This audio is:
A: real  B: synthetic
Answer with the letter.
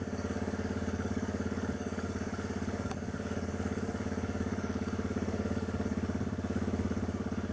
B